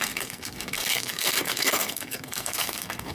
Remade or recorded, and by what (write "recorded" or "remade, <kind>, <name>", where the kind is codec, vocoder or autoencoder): remade, codec, SNAC